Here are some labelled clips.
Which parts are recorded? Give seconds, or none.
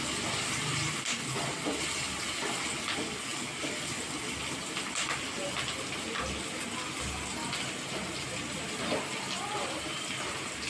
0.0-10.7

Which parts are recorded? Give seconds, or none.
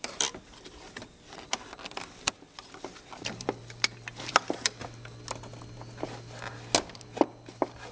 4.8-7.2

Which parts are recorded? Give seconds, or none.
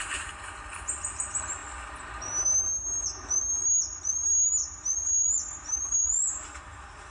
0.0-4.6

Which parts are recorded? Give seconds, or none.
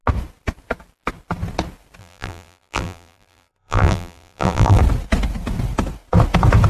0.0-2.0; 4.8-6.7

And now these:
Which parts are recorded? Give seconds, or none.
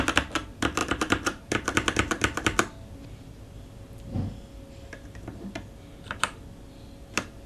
0.0-0.8; 1.5-7.5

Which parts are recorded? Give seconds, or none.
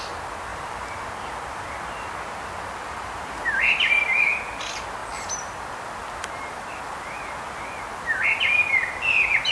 0.0-0.5; 1.1-2.8; 4.0-9.5